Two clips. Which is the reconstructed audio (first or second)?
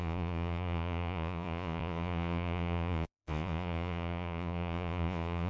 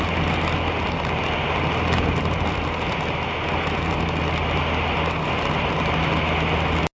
first